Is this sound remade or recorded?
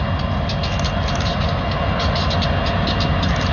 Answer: recorded